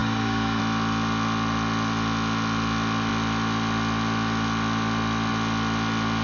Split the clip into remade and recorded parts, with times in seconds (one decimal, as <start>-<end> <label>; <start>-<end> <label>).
0.0-0.6 remade; 0.6-6.2 recorded